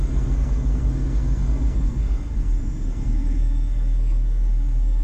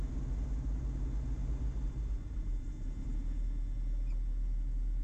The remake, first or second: first